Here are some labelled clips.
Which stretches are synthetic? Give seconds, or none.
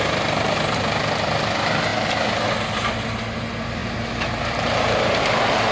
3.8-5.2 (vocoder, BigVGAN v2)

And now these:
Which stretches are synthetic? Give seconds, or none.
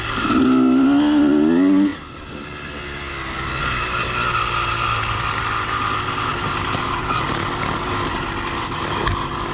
6.3-7.2 (vocoder, BigVGAN v2)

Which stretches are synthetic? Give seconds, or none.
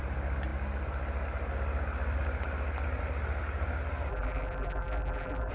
4.1-5.5 (vocoder, BigVGAN v2)